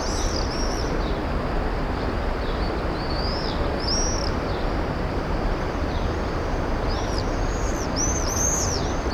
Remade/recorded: recorded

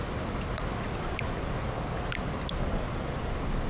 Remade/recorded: recorded